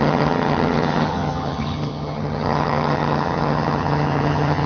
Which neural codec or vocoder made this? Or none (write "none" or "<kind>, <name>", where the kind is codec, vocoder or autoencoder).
vocoder, HiFi-GAN